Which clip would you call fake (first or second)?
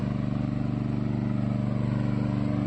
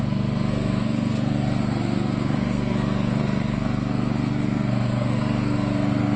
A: second